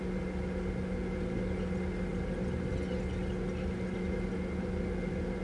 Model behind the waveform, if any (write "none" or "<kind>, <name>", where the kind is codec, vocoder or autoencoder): none